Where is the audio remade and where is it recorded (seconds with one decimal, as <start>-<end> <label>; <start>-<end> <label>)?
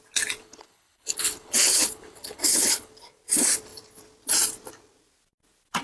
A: 0.0-0.4 recorded; 0.4-2.9 remade; 2.9-5.8 recorded